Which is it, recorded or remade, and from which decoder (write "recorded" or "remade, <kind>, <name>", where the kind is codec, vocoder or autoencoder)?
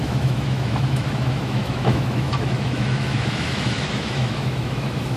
remade, autoencoder, DAC-VAE